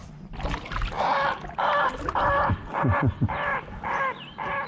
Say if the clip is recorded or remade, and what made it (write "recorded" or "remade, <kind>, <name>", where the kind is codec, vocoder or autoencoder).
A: recorded